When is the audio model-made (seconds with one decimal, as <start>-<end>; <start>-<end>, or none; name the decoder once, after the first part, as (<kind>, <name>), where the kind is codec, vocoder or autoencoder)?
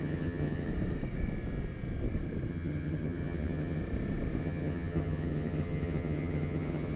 0.0-0.7 (vocoder, HiFi-GAN); 2.5-3.8; 4.4-7.0